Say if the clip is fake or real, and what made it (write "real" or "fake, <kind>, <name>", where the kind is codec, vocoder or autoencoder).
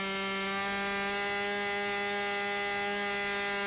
real